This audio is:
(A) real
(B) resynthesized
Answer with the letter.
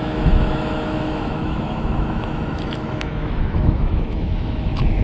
B